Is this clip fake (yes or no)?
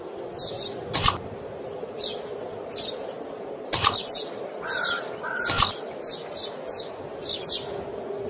no